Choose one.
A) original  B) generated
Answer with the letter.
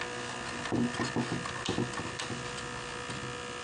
A